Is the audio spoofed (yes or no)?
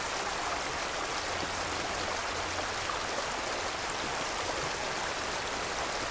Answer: no